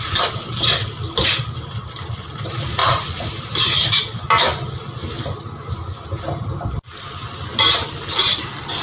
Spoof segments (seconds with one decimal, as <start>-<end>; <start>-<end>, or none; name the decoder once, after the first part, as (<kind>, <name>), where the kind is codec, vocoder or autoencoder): 0.0-8.8 (vocoder, BigVGAN v2)